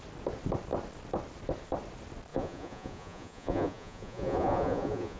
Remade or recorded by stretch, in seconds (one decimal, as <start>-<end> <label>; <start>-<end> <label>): 0.0-2.3 recorded; 2.3-5.2 remade